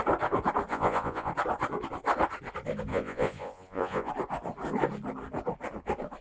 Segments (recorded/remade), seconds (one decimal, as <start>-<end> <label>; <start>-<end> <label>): 0.0-0.7 recorded; 0.7-1.3 remade; 1.3-2.9 recorded; 2.9-4.1 remade; 4.1-6.2 recorded